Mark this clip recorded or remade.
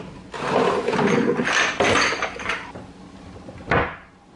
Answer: recorded